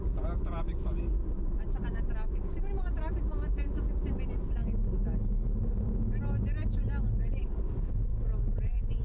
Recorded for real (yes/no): yes